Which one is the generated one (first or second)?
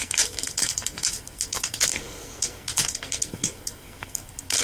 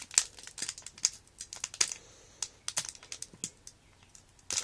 first